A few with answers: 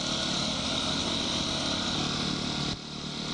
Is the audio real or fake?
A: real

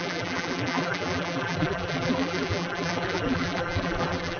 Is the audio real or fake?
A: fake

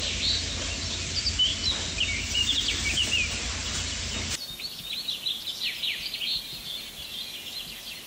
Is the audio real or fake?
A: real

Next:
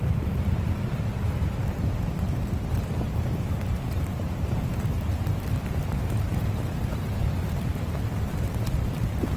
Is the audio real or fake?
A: fake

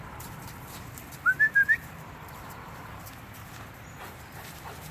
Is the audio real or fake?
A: fake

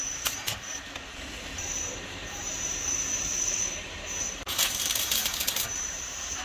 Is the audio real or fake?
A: fake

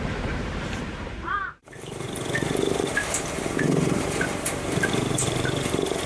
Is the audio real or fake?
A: fake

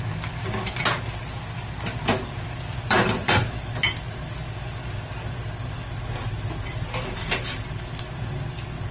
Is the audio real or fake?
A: fake